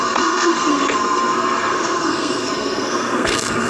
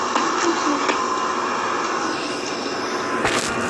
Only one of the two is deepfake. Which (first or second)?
first